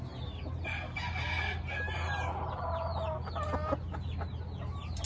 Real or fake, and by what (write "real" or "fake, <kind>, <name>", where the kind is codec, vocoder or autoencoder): real